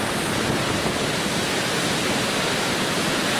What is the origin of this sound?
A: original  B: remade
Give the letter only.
A